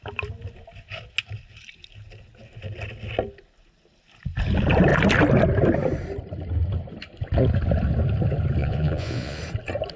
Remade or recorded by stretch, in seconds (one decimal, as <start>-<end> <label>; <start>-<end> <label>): 0.0-8.6 recorded; 8.6-9.4 remade; 9.4-10.0 recorded